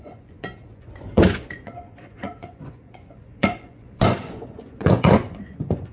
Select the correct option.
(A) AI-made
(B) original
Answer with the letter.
A